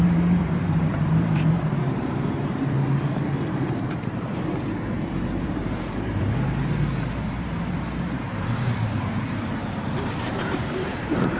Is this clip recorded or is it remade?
remade